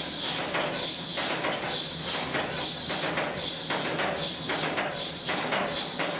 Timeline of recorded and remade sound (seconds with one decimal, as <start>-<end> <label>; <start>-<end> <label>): 0.0-6.2 recorded